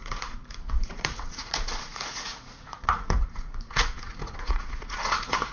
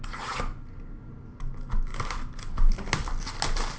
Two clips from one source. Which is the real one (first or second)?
second